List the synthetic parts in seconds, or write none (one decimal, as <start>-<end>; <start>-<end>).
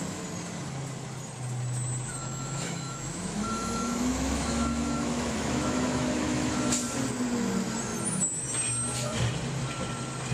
2.2-6.5